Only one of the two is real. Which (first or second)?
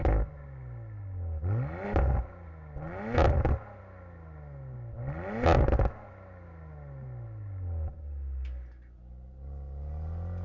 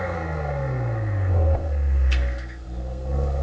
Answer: first